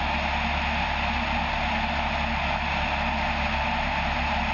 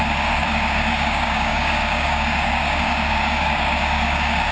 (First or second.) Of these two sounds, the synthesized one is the second